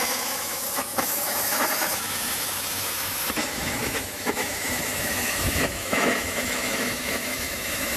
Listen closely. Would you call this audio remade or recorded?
remade